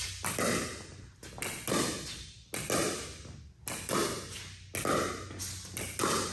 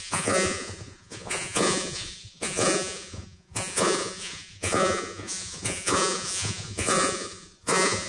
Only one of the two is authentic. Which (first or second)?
first